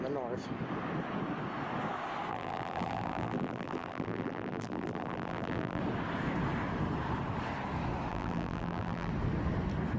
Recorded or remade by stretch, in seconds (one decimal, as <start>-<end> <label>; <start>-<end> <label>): 0.0-2.3 recorded; 2.3-5.8 remade; 5.8-8.1 recorded; 8.1-9.1 remade; 9.1-10.0 recorded